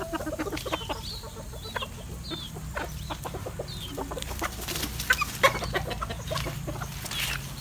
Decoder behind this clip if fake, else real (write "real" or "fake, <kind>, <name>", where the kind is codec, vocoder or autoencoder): real